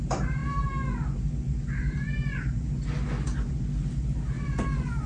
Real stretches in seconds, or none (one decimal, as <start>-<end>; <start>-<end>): 0.0-5.1